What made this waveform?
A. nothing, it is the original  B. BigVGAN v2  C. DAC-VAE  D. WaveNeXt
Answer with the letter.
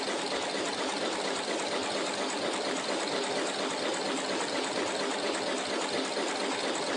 A